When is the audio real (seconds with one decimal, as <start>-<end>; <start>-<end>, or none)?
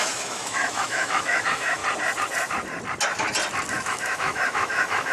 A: 1.8-3.7